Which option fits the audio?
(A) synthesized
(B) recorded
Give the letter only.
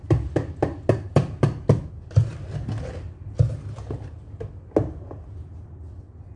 B